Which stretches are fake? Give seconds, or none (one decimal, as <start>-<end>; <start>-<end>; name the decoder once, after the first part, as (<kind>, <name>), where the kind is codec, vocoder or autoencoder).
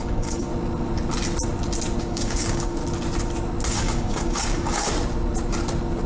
0.0-0.5 (codec, DAC); 2.0-2.8; 3.7-4.8